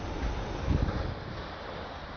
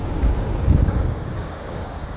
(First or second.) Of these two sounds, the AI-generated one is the second